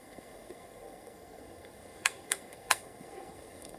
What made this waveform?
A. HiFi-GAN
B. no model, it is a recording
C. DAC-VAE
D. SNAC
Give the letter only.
D